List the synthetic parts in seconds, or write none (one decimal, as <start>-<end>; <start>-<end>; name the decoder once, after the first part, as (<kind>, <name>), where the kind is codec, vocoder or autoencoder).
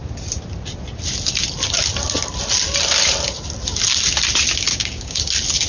4.7-5.2 (codec, DAC)